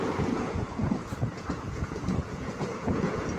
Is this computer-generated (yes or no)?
yes